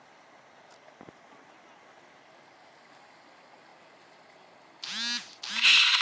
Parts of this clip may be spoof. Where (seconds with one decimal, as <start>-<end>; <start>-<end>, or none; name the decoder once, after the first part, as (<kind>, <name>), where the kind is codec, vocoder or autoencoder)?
none